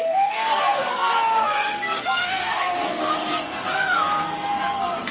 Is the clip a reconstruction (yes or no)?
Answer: yes